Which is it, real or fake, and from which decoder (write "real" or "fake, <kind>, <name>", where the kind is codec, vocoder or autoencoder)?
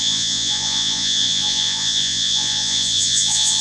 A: fake, vocoder, Vocos